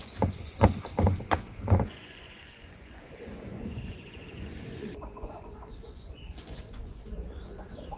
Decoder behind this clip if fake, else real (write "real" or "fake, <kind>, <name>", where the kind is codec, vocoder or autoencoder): fake, vocoder, Vocos